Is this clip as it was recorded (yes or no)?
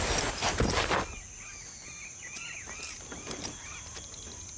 yes